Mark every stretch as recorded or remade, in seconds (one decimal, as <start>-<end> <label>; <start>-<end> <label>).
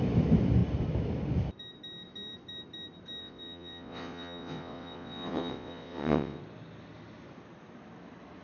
0.0-3.2 recorded; 3.2-6.4 remade; 6.4-8.4 recorded